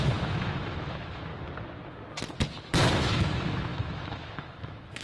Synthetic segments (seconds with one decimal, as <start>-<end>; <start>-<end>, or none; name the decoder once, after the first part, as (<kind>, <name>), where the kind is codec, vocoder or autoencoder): 0.0-1.3 (autoencoder, DAC-VAE); 2.9-5.0